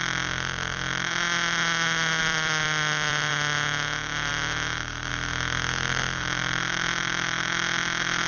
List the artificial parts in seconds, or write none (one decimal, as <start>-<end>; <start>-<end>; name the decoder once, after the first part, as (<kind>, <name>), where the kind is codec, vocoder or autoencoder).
2.2-3.3 (vocoder, BigVGAN v2); 4.3-5.1